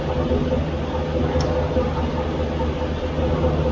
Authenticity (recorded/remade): recorded